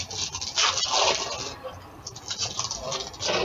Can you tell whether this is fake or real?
real